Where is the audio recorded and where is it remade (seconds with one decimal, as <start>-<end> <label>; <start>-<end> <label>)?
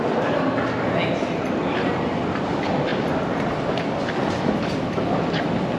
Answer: 0.0-5.8 recorded